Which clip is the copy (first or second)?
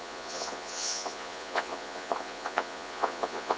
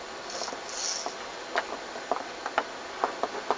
first